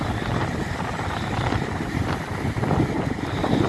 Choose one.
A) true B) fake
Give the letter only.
A